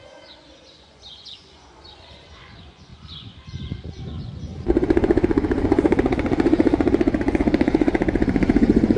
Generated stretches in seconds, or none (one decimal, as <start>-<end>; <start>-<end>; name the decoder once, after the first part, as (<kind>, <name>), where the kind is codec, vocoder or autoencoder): 0.0-9.0 (vocoder, Vocos)